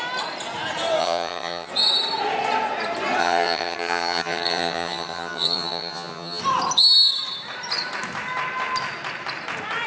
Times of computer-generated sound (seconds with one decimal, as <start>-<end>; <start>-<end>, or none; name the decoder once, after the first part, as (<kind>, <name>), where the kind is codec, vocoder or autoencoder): 1.0-1.7 (vocoder, HiFi-GAN); 3.2-6.4